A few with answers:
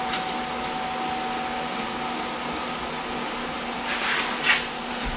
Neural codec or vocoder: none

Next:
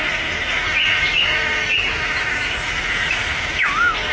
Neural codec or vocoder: none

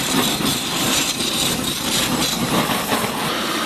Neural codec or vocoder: vocoder, BigVGAN v2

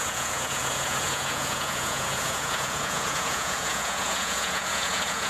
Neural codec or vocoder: vocoder, Vocos